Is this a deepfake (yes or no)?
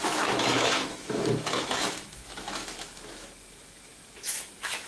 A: yes